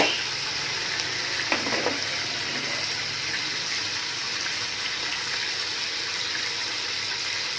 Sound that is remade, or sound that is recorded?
recorded